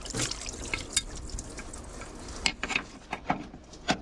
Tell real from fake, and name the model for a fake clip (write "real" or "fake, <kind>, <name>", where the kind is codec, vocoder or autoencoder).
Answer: real